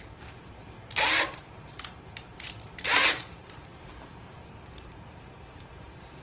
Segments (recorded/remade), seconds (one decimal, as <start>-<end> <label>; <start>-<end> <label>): 0.0-6.2 remade